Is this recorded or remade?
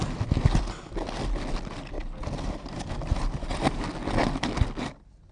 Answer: recorded